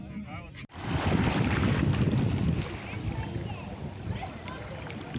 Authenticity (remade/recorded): recorded